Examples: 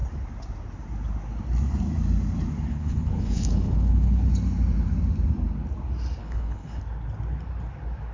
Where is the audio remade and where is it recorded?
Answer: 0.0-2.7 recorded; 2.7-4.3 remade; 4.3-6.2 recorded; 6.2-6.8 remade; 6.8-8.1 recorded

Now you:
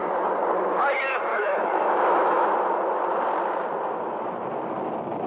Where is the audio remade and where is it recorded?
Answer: 0.0-1.3 recorded; 1.3-2.5 remade; 2.5-5.3 recorded